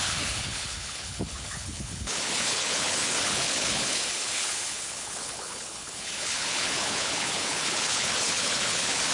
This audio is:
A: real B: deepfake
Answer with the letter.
B